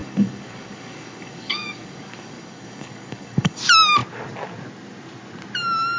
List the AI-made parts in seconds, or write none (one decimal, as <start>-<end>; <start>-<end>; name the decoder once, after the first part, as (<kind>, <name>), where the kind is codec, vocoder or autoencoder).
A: 0.0-3.6 (codec, DAC)